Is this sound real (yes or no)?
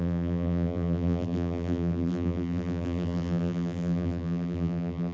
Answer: no